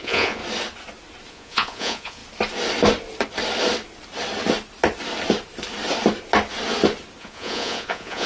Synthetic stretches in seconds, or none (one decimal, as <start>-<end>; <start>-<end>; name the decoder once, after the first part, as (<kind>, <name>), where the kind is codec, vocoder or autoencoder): 0.0-0.4 (vocoder, Vocos); 1.3-2.2; 7.2-8.3